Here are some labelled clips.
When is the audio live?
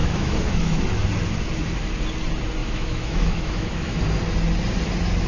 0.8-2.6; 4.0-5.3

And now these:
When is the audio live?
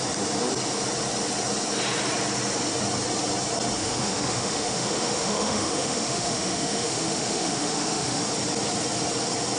0.0-3.8; 8.2-9.6